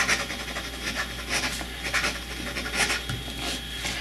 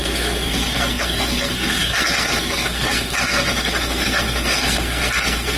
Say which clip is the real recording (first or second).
first